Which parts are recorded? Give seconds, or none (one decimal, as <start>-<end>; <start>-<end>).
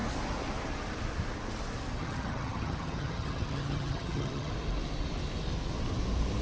0.0-2.0; 4.5-6.4